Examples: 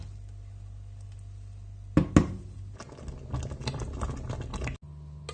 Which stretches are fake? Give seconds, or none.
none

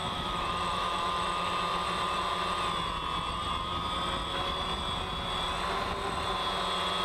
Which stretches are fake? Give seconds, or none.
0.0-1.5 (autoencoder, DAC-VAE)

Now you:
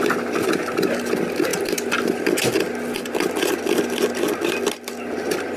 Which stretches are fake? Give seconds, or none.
none